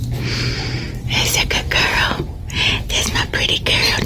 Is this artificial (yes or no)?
no